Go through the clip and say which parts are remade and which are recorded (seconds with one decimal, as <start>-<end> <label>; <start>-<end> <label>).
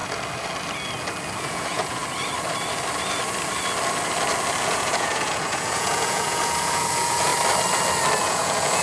0.0-1.4 recorded; 1.4-2.0 remade; 2.0-4.6 recorded; 4.6-7.3 remade; 7.3-8.2 recorded; 8.2-8.8 remade